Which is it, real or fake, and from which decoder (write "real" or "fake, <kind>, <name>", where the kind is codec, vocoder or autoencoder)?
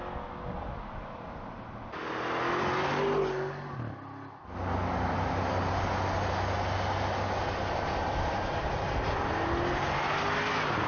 real